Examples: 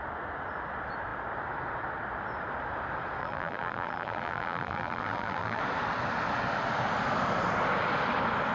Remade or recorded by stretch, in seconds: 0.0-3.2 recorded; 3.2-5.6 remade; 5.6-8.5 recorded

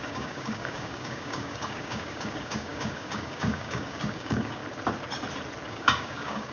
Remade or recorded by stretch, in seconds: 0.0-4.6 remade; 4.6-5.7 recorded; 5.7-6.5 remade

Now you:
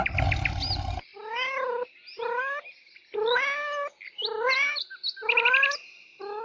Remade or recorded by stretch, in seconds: 0.0-6.4 recorded

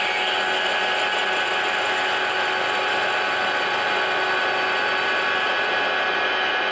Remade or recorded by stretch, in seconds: 0.0-6.7 recorded